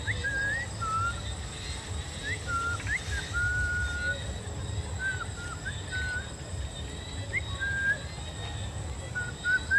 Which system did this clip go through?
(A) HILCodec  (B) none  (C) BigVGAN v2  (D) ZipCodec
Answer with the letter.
B